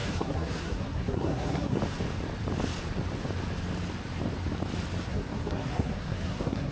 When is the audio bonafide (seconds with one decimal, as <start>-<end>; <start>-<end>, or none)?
1.8-5.1